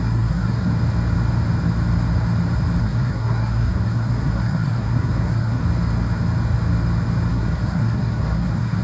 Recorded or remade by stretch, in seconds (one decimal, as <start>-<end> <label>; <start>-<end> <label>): 0.0-0.7 remade; 0.7-2.8 recorded; 2.8-5.6 remade; 5.6-7.3 recorded; 7.3-8.8 remade